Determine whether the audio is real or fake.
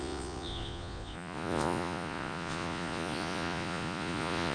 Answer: fake